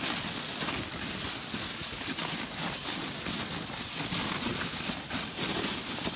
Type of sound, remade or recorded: recorded